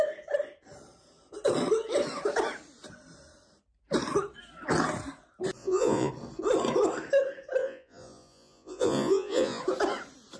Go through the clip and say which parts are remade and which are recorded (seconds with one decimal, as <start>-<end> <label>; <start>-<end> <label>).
0.0-5.6 recorded; 5.6-6.1 remade; 6.1-7.6 recorded; 7.6-9.6 remade; 9.6-10.4 recorded